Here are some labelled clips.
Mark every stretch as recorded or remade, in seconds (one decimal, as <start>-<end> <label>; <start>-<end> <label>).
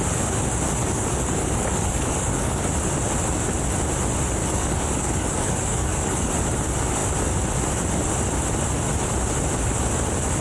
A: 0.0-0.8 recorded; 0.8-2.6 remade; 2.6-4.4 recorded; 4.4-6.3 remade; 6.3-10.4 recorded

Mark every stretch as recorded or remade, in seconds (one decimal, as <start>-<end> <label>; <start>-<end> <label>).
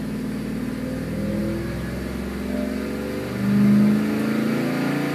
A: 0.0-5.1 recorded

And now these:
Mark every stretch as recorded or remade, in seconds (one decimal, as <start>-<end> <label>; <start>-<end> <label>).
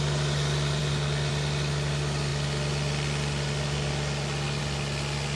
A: 0.0-5.4 recorded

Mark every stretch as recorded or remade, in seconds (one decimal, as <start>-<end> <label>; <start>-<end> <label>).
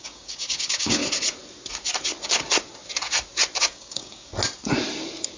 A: 0.0-1.0 remade; 1.0-3.6 recorded; 3.6-4.3 remade; 4.3-5.4 recorded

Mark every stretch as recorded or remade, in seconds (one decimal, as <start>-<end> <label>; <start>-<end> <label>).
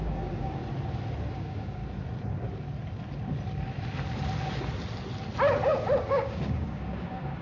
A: 0.0-0.6 remade; 0.6-1.3 recorded; 1.3-1.8 remade; 1.8-6.1 recorded; 6.1-7.4 remade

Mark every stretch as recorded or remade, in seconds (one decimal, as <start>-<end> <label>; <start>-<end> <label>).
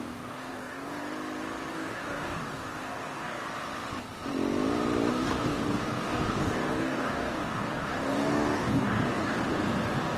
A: 0.0-1.0 remade; 1.0-1.7 recorded; 1.7-3.3 remade; 3.3-5.1 recorded; 5.1-9.3 remade; 9.3-10.2 recorded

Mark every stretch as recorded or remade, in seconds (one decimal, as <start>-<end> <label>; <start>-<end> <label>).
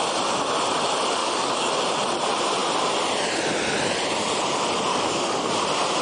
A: 0.0-1.2 recorded; 1.2-1.7 remade; 1.7-4.9 recorded; 4.9-5.5 remade; 5.5-6.0 recorded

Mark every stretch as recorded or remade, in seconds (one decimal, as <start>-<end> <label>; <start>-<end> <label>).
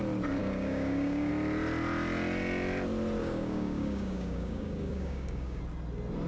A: 0.0-0.4 recorded; 0.4-1.3 remade; 1.3-3.2 recorded; 3.2-5.6 remade; 5.6-6.3 recorded